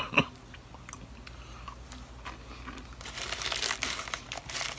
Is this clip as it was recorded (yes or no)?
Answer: yes